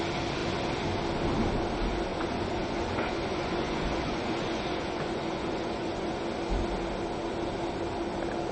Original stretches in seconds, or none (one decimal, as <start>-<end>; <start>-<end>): 0.0-2.1; 6.2-8.5